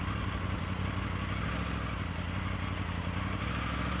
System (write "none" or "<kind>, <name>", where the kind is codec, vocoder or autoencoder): none